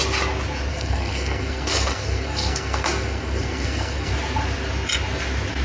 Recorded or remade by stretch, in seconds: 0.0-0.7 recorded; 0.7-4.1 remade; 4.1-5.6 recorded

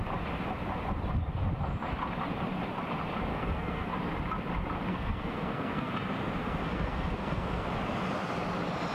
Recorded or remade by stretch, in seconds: 0.0-3.3 recorded; 3.3-3.9 remade; 3.9-4.9 recorded; 4.9-5.9 remade; 5.9-6.4 recorded; 6.4-7.7 remade; 7.7-8.9 recorded